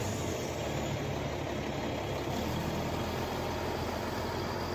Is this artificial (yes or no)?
no